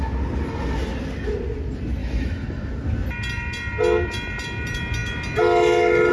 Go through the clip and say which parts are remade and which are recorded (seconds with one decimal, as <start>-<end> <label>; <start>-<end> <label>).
0.0-2.0 recorded; 2.0-2.7 remade; 2.7-6.1 recorded